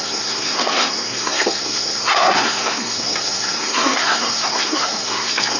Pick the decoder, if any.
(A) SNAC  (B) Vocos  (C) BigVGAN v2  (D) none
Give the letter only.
A